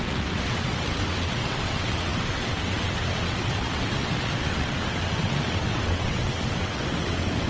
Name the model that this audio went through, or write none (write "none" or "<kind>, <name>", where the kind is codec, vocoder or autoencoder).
vocoder, WaveNeXt